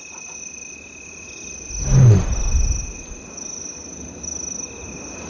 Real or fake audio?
real